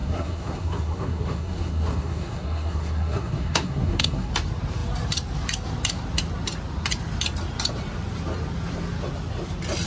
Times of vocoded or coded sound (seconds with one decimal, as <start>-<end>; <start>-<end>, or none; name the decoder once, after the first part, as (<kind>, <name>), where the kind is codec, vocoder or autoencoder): 0.0-4.3 (codec, SNAC)